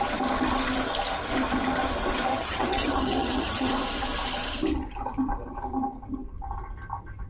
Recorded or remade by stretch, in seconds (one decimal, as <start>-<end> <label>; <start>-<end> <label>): 0.0-2.3 recorded; 2.3-3.7 remade; 3.7-7.3 recorded